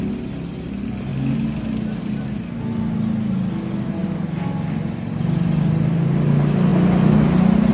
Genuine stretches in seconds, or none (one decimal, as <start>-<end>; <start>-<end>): 0.0-7.7